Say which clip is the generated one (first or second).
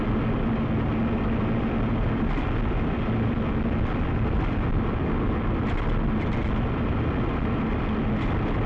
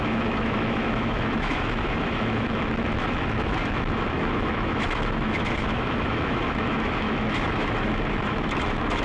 second